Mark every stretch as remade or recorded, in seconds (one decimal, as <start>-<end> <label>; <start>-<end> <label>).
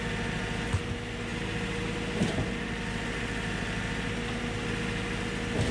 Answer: 0.0-5.7 recorded